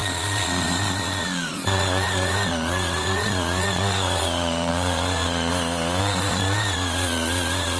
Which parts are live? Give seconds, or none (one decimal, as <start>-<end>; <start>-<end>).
5.5-6.0